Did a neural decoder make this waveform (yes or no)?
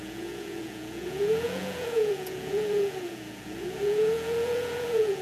yes